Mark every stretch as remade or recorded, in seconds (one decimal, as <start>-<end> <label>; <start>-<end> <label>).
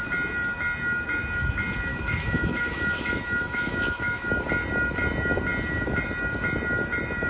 0.0-1.9 recorded; 1.9-4.3 remade; 4.3-7.3 recorded